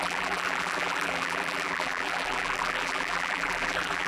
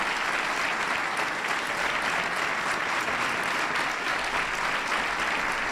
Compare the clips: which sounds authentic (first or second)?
second